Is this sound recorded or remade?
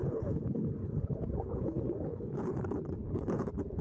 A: remade